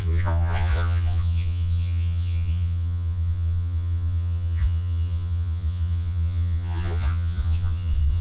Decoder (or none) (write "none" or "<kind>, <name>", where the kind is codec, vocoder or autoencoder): vocoder, Vocos